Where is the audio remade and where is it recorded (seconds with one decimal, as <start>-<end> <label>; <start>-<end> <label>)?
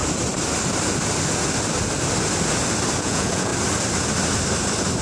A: 0.0-3.0 recorded; 3.0-3.5 remade; 3.5-5.0 recorded